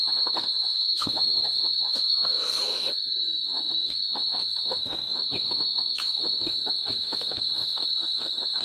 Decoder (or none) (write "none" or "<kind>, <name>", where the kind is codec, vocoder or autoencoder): autoencoder, DAC-VAE